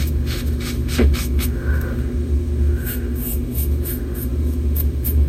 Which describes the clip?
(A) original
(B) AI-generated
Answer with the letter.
B